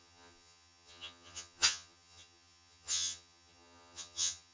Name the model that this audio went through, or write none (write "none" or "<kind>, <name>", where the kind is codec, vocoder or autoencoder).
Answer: vocoder, HiFi-GAN